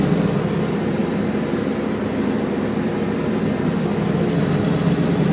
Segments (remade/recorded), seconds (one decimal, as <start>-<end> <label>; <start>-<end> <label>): 0.0-5.3 recorded